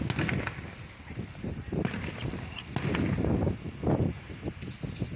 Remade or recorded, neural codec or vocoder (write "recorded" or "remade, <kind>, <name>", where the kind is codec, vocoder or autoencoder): recorded